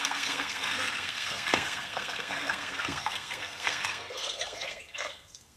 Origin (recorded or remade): remade